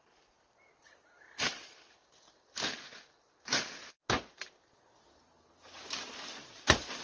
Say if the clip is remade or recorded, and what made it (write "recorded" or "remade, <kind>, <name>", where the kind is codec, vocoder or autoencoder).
recorded